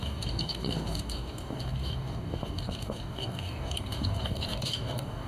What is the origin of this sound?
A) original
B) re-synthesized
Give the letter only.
B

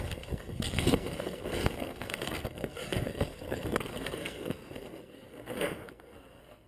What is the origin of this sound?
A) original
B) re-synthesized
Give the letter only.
B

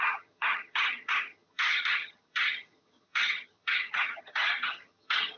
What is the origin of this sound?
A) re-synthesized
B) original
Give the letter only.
A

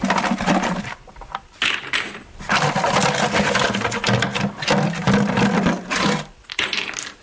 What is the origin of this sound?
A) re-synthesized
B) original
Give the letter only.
B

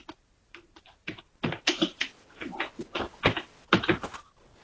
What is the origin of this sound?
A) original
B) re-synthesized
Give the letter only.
A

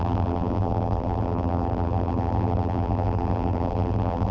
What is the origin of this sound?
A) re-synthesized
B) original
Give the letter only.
A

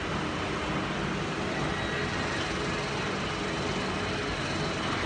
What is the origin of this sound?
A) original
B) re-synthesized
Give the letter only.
A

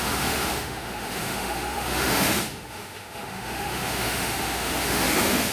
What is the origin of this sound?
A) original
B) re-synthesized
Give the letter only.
B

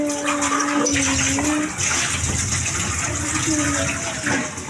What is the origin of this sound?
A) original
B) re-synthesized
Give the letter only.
A